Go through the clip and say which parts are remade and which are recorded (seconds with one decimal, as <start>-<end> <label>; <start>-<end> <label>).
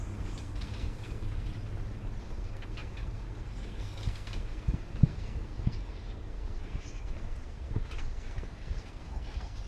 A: 0.0-1.5 remade; 1.5-2.2 recorded; 2.2-9.7 remade